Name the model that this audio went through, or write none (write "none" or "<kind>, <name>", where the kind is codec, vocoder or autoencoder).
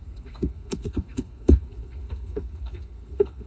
codec, SNAC